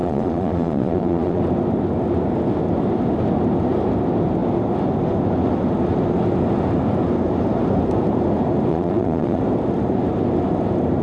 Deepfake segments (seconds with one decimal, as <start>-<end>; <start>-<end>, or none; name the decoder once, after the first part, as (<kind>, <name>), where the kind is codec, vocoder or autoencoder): 0.0-1.4 (vocoder, Vocos); 8.7-9.4